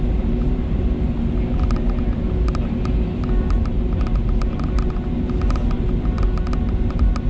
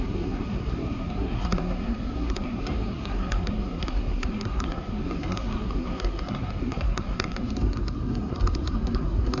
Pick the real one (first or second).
first